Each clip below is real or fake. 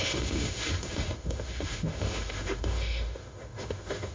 fake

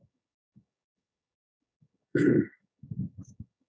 fake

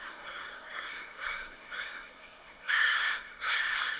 fake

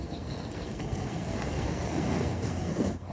fake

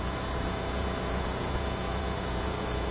fake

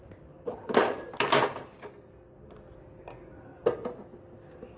real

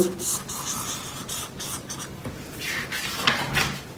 real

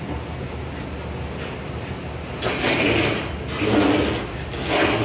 real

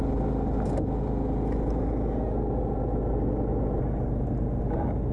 real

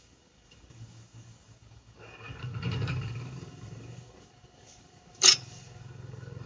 fake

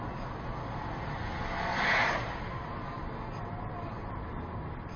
real